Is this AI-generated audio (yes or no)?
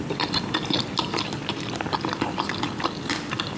no